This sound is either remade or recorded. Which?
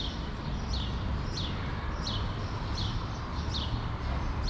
recorded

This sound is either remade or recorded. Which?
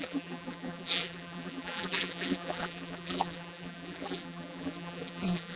remade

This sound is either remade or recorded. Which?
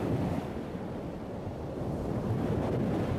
remade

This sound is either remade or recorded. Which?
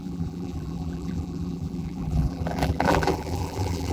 remade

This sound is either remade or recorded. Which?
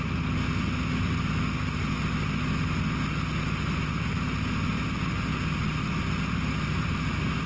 recorded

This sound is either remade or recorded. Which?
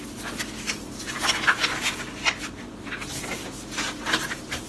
recorded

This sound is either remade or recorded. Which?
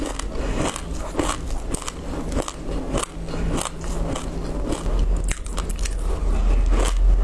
recorded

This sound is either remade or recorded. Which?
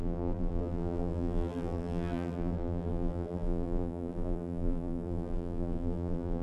remade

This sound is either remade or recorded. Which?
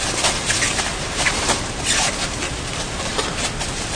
recorded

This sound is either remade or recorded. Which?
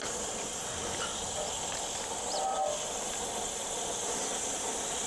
recorded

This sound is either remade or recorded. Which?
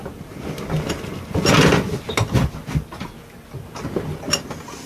recorded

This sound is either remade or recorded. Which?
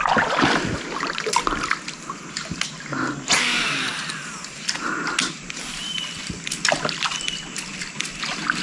recorded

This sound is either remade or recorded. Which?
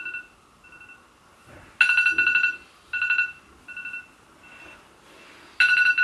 recorded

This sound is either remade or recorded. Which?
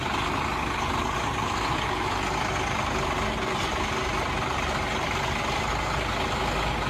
recorded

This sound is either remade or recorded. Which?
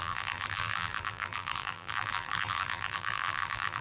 remade